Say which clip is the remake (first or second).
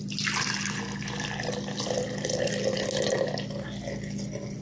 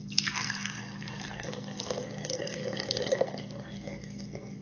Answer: second